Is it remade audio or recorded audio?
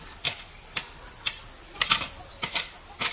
recorded